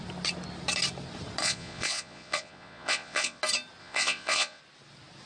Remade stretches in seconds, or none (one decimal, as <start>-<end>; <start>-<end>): 1.4-3.4; 3.8-4.6